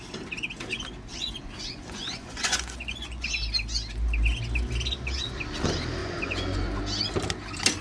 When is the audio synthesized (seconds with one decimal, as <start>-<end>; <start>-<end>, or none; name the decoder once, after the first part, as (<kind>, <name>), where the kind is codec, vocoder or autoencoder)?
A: 1.1-3.3 (vocoder, Vocos); 6.0-6.8

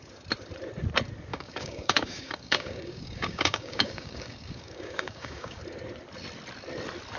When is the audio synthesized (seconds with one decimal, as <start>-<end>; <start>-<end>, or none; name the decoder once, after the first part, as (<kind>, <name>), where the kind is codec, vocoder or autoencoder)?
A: 1.3-5.6 (codec, DAC)

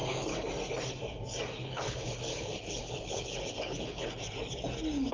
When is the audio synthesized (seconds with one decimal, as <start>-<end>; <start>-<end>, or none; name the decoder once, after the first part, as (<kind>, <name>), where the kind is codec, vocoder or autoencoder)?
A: 1.6-4.1 (codec, HILCodec)

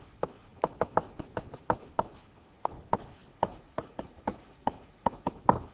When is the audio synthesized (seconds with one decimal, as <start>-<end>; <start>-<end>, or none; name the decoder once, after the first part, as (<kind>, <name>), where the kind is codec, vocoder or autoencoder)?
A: 3.3-5.3 (vocoder, Vocos)